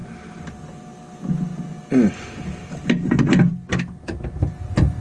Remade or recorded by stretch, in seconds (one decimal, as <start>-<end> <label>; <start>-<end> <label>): 0.0-0.6 remade; 0.6-5.0 recorded